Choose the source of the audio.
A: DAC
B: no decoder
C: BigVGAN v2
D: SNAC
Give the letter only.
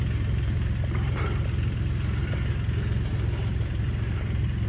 B